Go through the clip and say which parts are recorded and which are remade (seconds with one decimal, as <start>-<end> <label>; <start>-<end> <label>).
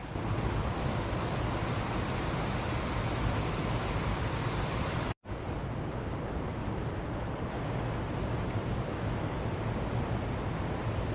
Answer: 0.0-6.6 recorded; 6.6-7.7 remade; 7.7-11.1 recorded